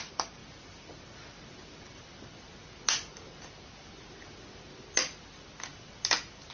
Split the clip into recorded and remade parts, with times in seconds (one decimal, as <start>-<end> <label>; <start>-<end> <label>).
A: 0.0-6.5 recorded